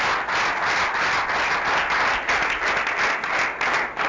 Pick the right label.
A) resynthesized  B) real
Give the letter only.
B